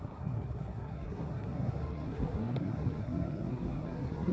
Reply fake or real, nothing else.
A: fake